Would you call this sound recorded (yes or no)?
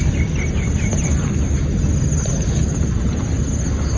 yes